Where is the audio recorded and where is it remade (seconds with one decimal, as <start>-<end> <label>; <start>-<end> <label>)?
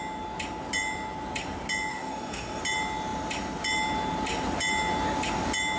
0.0-1.9 recorded; 1.9-2.6 remade; 2.6-5.8 recorded